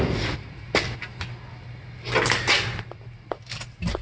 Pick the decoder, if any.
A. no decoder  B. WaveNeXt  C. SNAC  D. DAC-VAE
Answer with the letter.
A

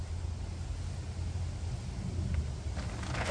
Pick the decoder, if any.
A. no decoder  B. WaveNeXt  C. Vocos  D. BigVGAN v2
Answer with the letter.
A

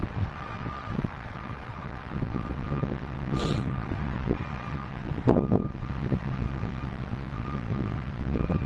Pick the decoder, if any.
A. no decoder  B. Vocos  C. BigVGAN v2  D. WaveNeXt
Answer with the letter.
D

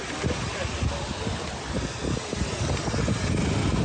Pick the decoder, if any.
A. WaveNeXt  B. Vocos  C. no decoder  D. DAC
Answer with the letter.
C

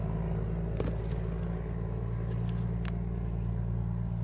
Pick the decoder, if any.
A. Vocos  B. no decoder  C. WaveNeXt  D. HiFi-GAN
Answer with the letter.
B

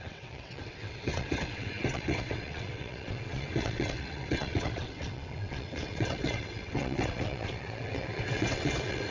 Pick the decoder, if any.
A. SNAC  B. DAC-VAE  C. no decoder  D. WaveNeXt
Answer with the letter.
D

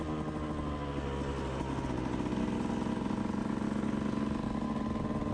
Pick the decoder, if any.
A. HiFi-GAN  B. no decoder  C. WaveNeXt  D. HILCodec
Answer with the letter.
B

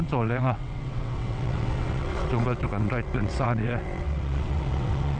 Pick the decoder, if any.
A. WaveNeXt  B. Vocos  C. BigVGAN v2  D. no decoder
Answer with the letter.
A